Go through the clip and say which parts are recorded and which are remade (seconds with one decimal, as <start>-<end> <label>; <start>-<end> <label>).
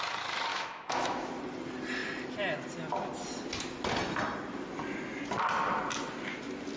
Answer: 0.0-0.5 recorded; 0.5-1.3 remade; 1.3-6.8 recorded